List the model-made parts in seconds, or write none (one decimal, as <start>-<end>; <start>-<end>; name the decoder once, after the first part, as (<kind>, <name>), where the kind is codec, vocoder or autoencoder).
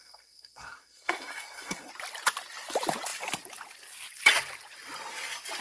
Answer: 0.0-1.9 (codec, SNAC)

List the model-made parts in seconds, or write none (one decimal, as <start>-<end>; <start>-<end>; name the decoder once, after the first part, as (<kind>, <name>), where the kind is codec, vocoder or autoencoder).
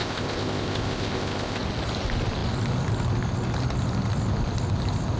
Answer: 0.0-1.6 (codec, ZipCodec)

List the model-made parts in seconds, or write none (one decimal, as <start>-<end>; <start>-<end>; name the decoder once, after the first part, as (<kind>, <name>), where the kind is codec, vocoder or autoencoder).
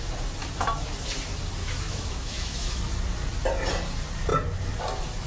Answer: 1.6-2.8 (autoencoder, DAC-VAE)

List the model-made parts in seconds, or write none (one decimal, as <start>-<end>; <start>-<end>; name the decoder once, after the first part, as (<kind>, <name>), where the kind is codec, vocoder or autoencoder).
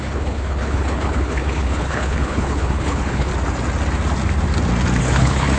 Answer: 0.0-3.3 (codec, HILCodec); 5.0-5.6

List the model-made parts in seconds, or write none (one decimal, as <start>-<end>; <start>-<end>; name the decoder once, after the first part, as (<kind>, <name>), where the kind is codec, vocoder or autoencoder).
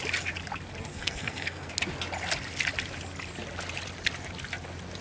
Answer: 0.9-1.7 (codec, SNAC)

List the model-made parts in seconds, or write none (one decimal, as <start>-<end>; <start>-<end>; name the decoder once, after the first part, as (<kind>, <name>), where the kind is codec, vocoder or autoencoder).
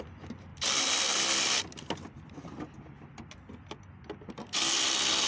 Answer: none